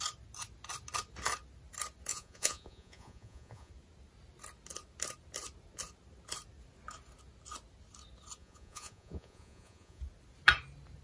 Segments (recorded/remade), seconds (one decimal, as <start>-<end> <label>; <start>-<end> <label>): 0.0-2.1 recorded; 2.1-3.7 remade; 3.7-8.4 recorded; 8.4-10.0 remade; 10.0-11.0 recorded